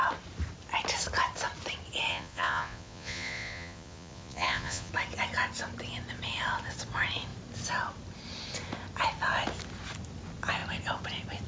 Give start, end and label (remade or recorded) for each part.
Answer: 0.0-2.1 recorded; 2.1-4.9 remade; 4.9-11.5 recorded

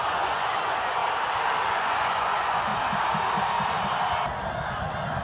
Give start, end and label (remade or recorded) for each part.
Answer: 0.0-1.0 remade; 1.0-1.7 recorded; 1.7-2.7 remade; 2.7-5.2 recorded

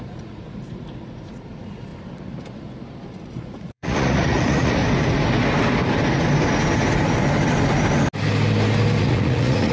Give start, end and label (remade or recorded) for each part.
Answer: 0.0-1.9 remade; 1.9-3.1 recorded; 3.1-4.8 remade; 4.8-9.0 recorded; 9.0-9.7 remade

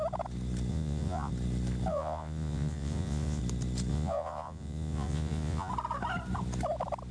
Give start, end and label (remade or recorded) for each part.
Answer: 0.0-0.7 recorded; 0.7-1.3 remade; 1.3-1.9 recorded; 1.9-3.4 remade; 3.4-3.9 recorded; 3.9-5.7 remade; 5.7-7.1 recorded

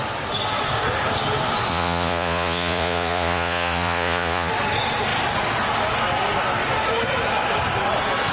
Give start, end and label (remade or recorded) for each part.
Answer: 0.0-1.7 recorded; 1.7-4.5 remade; 4.5-8.3 recorded